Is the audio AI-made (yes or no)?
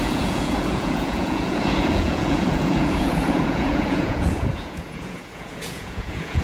yes